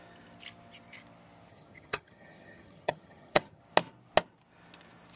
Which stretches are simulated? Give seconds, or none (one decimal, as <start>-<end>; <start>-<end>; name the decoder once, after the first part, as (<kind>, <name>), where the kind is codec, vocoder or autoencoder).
1.5-3.6 (vocoder, HiFi-GAN)